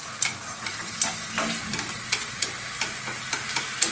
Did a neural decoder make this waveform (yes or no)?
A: no